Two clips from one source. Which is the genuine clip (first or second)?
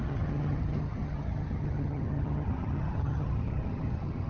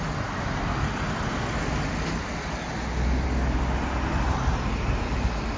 second